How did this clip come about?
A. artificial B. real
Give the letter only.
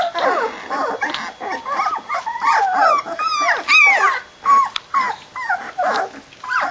B